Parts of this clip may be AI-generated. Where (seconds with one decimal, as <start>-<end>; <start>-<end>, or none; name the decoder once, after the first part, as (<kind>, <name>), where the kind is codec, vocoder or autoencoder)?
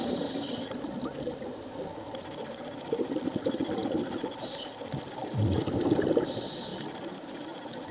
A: none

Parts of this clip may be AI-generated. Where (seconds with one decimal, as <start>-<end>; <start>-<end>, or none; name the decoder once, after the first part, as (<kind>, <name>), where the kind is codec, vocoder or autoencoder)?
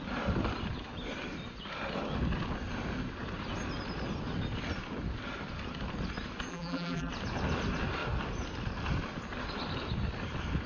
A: 6.5-7.1 (vocoder, BigVGAN v2)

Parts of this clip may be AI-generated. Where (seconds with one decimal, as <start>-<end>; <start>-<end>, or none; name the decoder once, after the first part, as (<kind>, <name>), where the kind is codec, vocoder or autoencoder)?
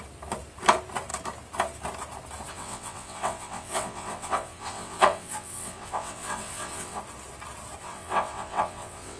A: 2.5-7.0 (vocoder, WaveNeXt); 7.8-9.2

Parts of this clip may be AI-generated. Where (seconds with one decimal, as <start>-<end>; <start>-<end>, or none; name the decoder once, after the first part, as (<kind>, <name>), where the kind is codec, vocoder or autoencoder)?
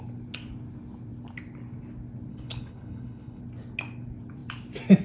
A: 2.3-3.4 (codec, HILCodec)